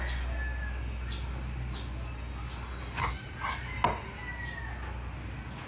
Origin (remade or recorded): recorded